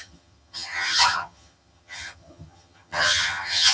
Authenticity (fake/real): fake